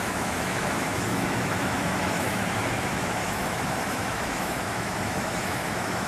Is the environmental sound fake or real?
fake